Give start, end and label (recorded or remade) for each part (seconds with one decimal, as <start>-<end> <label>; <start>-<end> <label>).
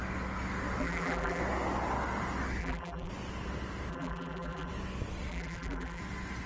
0.0-0.8 recorded; 0.8-1.4 remade; 1.4-2.6 recorded; 2.6-3.1 remade; 3.1-3.9 recorded; 3.9-4.7 remade; 4.7-5.3 recorded; 5.3-6.0 remade; 6.0-6.5 recorded